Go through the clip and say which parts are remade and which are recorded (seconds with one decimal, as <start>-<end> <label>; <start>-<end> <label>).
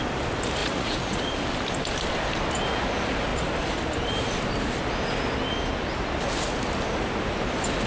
0.0-0.6 recorded; 0.6-1.2 remade; 1.2-7.9 recorded